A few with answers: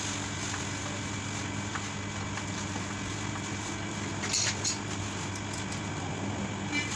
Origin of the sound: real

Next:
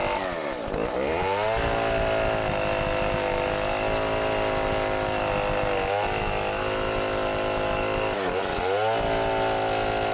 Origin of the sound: real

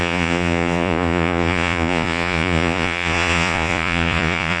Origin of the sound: fake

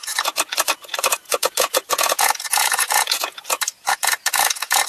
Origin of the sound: fake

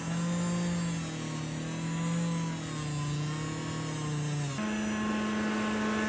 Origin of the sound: real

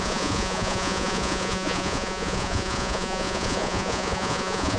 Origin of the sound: fake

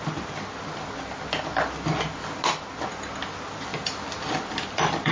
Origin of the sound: real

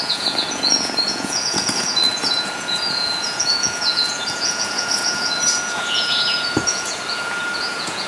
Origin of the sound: fake